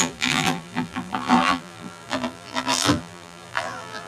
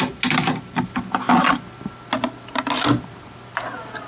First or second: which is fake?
first